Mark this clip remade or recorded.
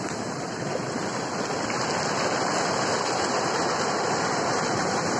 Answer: recorded